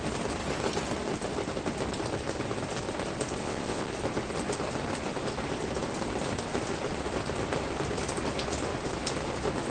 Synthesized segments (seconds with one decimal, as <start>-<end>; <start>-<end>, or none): 3.4-3.9